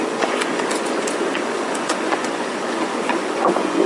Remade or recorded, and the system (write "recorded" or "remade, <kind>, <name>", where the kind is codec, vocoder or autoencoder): remade, vocoder, Vocos